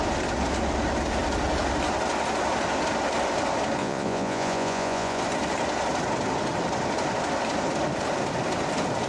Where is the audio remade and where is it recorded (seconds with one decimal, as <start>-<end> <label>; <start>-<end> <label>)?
0.0-3.8 recorded; 3.8-5.2 remade; 5.2-9.1 recorded